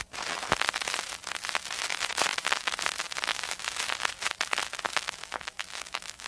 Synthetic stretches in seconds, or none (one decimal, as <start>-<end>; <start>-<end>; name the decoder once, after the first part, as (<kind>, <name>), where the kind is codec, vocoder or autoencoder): 3.3-3.9 (autoencoder, DAC-VAE); 4.9-6.3